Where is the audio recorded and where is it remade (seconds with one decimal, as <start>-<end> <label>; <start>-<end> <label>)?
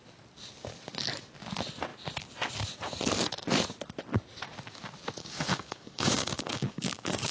0.0-5.2 recorded; 5.2-7.3 remade